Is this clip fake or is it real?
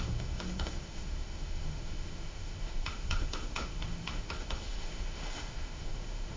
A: fake